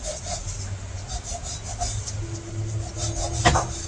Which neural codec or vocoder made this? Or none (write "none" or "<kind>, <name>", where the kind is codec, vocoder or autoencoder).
none